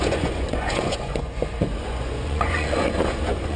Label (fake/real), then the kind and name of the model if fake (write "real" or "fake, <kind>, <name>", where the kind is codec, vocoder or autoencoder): fake, vocoder, Vocos